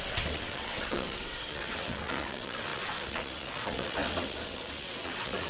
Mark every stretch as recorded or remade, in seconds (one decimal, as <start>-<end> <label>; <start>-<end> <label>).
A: 0.0-5.5 remade